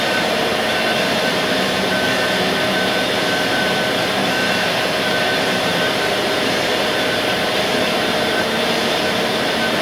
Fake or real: fake